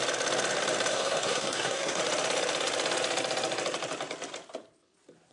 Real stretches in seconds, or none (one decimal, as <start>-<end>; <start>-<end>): 0.0-0.9; 2.0-5.3